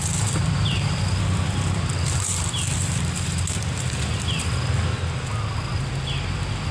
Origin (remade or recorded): recorded